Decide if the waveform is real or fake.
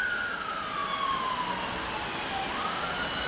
real